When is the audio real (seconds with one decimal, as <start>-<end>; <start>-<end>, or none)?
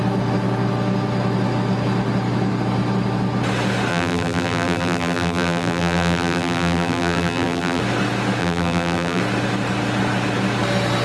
0.0-3.9; 7.8-8.4; 9.2-11.0